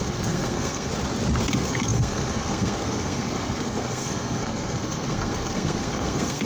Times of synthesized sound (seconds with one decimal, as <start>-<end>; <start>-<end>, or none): 0.0-0.9; 1.5-6.5